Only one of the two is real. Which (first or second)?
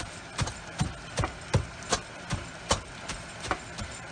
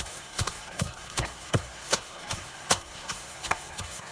first